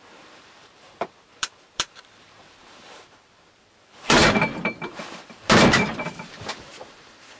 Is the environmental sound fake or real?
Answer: fake